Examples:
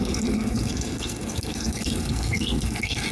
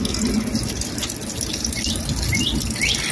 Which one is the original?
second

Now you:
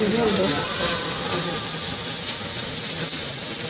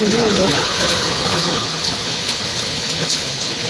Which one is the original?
first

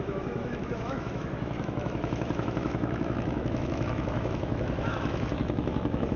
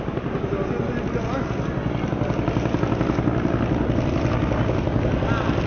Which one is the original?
second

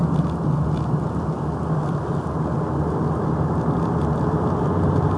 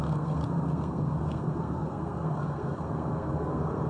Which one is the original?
first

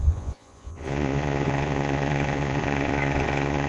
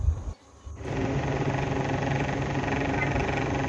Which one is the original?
second